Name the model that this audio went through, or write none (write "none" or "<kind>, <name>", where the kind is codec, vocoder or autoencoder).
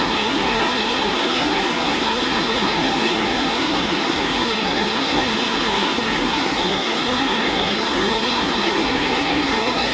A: codec, SNAC